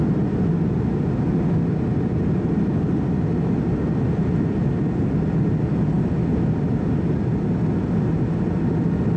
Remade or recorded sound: recorded